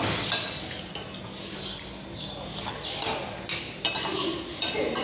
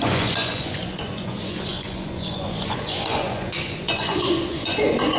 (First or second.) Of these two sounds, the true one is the first